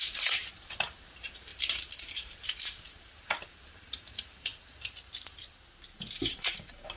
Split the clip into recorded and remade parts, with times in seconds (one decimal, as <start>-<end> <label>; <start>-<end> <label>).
0.0-4.5 remade; 4.5-6.3 recorded; 6.3-7.0 remade